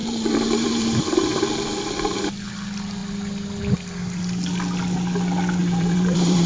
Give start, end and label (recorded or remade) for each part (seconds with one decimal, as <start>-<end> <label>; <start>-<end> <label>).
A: 0.0-1.4 remade; 1.4-5.6 recorded; 5.6-6.5 remade